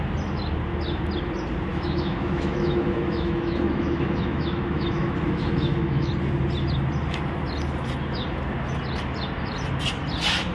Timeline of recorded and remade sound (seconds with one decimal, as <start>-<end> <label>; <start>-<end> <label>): 0.0-1.7 recorded; 1.7-6.1 remade; 6.1-10.5 recorded